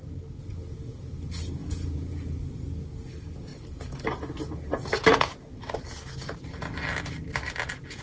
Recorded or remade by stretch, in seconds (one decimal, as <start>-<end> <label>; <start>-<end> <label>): 0.0-0.5 recorded; 0.5-1.1 remade; 1.1-1.6 recorded; 1.6-2.5 remade; 2.5-8.0 recorded